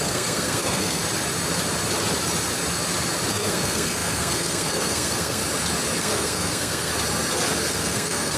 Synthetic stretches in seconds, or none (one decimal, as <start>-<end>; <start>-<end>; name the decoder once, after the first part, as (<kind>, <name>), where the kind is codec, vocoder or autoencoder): 0.0-1.0 (codec, SNAC); 3.3-5.4; 6.0-6.9; 7.7-8.4